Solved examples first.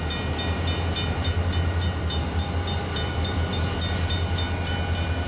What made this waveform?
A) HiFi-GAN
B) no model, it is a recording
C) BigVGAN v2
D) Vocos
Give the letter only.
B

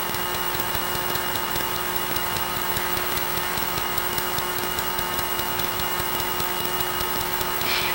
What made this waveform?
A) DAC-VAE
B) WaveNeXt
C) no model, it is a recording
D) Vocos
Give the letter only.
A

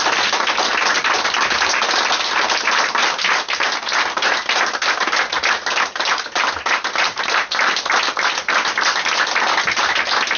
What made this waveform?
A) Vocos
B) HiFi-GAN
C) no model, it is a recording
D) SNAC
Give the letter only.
C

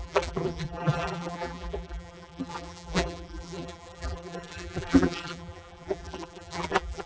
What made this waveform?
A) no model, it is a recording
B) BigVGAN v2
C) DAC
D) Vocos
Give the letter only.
B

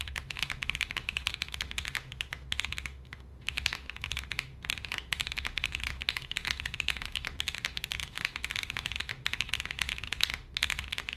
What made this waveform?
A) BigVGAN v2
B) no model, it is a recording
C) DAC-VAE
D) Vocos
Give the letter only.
C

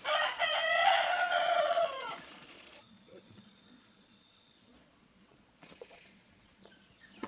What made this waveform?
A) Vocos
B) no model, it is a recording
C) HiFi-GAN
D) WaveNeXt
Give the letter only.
A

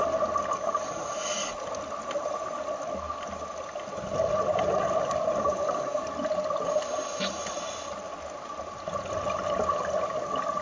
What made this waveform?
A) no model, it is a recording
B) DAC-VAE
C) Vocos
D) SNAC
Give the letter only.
A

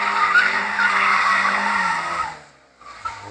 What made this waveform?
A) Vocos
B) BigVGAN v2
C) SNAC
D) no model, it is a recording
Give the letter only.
D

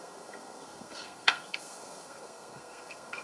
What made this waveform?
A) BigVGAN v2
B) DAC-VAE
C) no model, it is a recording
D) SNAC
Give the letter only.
D